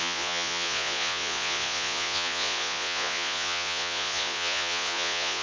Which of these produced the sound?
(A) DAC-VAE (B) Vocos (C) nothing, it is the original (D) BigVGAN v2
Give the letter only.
B